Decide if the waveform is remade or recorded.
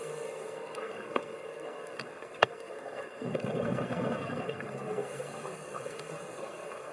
remade